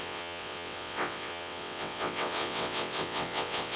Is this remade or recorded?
remade